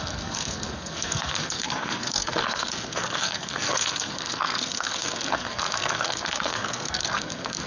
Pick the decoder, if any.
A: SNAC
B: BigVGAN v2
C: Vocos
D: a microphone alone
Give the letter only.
A